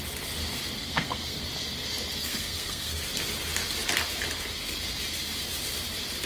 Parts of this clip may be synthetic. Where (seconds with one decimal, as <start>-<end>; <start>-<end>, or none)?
0.8-1.4; 2.2-3.0